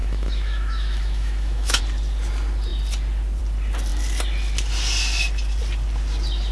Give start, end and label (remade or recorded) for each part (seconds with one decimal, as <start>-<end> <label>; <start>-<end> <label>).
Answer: 0.0-1.8 remade; 1.8-6.5 recorded